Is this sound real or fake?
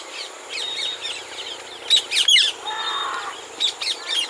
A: real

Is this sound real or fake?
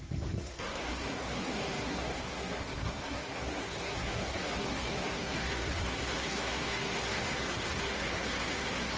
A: fake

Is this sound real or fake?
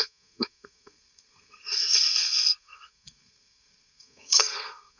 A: fake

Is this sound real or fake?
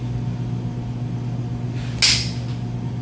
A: real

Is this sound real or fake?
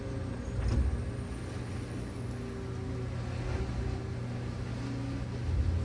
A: real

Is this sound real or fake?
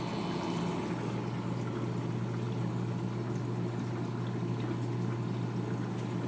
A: real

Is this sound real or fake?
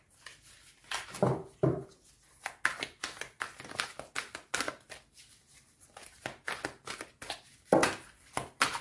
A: real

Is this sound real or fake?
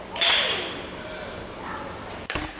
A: real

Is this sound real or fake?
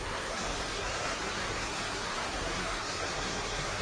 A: fake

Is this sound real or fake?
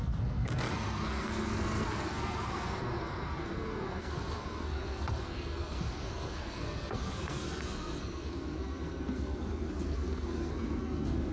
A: fake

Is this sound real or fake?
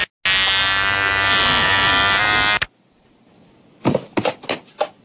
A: real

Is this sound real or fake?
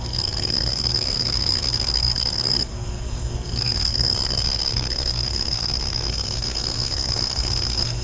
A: fake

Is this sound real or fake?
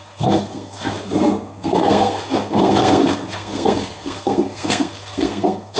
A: fake